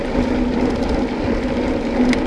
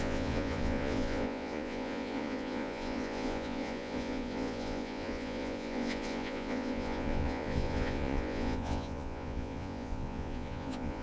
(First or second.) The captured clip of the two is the first